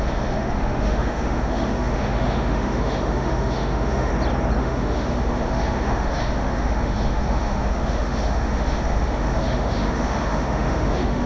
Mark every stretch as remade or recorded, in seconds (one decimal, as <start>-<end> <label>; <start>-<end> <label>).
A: 0.0-4.1 remade; 4.1-4.6 recorded; 4.6-11.3 remade